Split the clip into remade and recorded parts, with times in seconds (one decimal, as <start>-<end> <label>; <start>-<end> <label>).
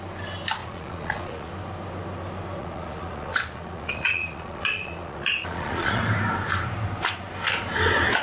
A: 0.0-0.6 recorded; 0.6-1.5 remade; 1.5-2.6 recorded; 2.6-6.0 remade; 6.0-8.2 recorded